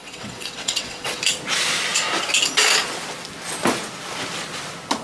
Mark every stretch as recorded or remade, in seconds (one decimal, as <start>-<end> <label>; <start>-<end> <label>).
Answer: 0.0-1.2 remade; 1.2-5.0 recorded